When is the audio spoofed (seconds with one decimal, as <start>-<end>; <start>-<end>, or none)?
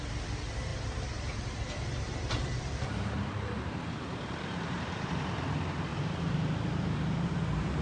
0.7-5.4; 5.9-7.8